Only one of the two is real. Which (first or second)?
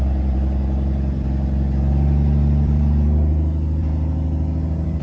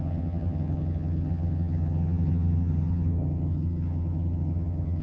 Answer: first